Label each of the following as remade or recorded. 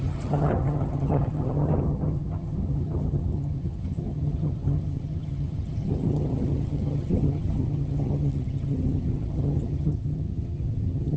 remade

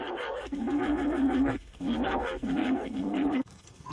remade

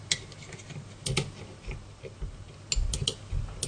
recorded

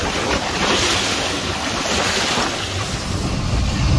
recorded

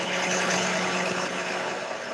remade